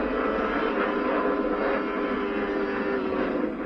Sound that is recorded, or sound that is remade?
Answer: recorded